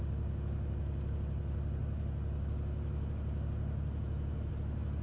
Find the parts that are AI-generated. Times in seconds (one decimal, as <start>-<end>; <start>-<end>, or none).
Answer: none